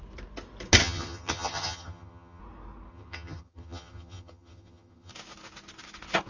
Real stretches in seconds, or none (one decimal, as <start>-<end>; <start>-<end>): 0.0-0.8; 2.4-2.9; 5.1-6.3